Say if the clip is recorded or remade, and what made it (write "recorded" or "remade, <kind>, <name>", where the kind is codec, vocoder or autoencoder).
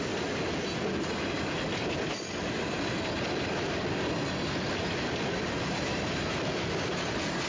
recorded